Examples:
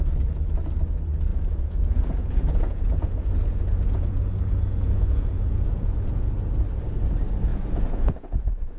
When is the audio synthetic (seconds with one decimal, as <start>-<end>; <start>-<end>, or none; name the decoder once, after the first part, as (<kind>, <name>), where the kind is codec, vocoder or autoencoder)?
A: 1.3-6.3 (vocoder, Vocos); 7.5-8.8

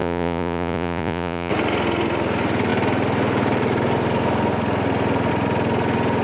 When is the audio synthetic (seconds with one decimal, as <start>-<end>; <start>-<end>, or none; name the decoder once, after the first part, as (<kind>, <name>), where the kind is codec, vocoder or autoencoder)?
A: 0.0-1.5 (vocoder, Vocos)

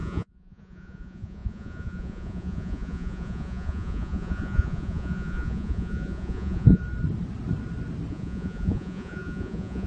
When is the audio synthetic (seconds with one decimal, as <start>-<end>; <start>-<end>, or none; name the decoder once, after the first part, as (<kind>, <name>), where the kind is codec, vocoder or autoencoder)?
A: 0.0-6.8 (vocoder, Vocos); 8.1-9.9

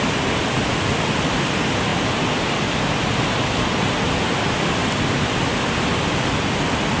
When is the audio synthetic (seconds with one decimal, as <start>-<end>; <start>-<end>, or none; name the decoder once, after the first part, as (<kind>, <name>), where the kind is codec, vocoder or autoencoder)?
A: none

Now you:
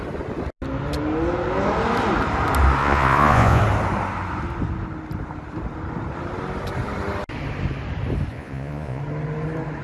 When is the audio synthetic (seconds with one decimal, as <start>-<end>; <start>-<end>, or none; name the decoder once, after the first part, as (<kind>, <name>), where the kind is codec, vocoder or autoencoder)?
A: 2.8-3.6 (vocoder, Vocos); 8.3-9.0